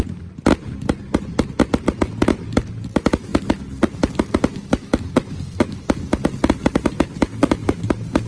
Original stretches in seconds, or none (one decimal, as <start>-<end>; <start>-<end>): 0.0-8.3